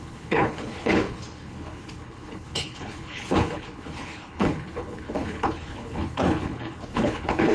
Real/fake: fake